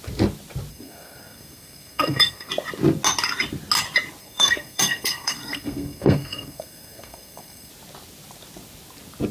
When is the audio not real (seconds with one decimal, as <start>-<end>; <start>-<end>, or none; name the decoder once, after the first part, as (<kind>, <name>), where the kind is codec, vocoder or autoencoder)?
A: 0.7-2.5 (codec, SNAC); 4.2-7.7